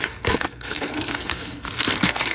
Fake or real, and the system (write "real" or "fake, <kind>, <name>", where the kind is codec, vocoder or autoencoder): fake, codec, SNAC